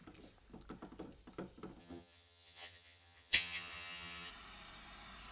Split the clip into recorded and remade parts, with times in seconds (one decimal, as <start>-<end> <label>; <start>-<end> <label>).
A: 0.0-1.8 recorded; 1.8-4.3 remade; 4.3-5.3 recorded